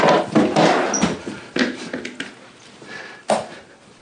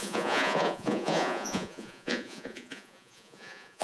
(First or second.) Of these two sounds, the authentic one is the first